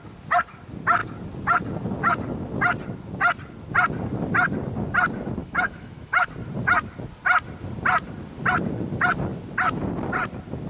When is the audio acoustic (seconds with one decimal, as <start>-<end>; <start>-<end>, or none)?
0.0-5.4; 6.3-10.7